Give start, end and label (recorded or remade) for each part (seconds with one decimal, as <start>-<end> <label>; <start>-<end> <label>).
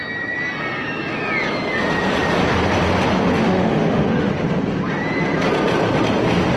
0.0-3.4 recorded; 3.4-4.3 remade; 4.3-6.6 recorded